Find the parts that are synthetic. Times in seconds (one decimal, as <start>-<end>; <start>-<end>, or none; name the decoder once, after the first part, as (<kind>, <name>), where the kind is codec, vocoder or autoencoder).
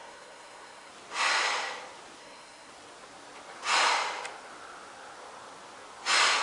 0.0-0.9 (codec, SNAC); 2.2-2.7